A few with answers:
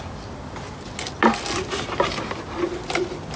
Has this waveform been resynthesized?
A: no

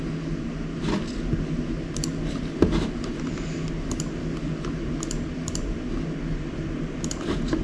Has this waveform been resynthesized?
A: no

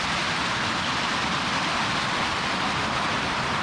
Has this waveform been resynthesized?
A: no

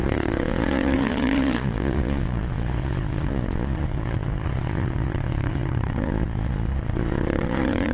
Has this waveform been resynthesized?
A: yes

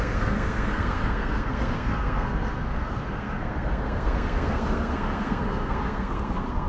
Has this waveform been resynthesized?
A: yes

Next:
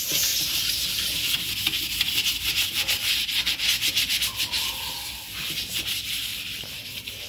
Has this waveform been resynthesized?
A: yes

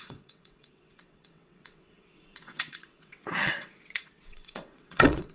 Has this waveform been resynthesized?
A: yes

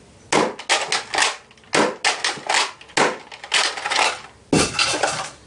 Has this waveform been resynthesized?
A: no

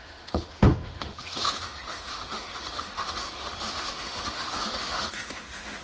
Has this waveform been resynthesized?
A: yes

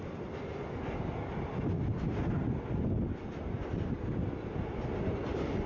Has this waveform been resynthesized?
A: no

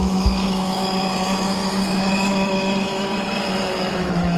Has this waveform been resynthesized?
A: yes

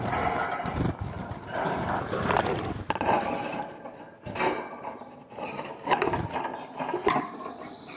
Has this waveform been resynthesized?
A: no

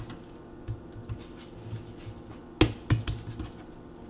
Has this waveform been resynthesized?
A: no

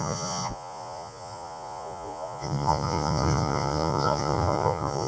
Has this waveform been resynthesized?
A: yes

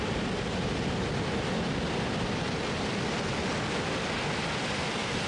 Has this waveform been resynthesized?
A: no